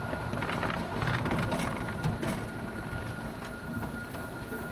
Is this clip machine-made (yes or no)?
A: no